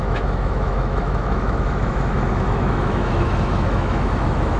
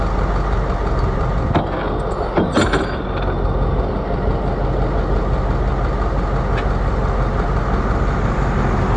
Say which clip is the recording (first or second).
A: second